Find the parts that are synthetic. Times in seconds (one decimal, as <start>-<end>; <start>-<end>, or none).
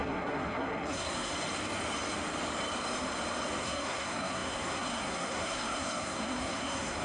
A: 0.0-1.3; 3.6-7.0